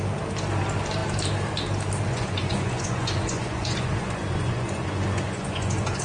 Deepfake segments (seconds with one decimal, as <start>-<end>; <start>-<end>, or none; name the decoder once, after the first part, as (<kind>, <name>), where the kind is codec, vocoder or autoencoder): 2.1-6.0 (vocoder, Vocos)